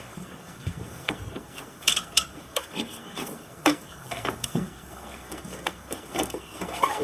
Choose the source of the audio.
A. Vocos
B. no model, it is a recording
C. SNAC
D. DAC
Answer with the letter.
C